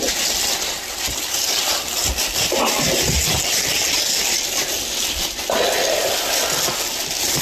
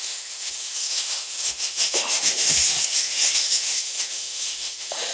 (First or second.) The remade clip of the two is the second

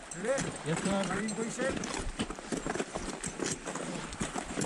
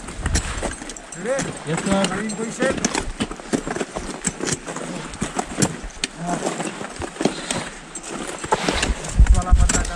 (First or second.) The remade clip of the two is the first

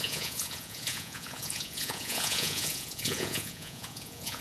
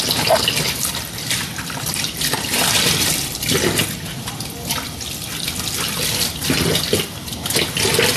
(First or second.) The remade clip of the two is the first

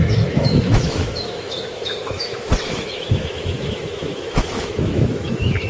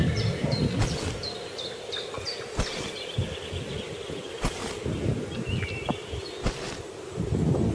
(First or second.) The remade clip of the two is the first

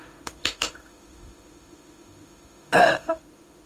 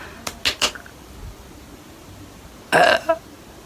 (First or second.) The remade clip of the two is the first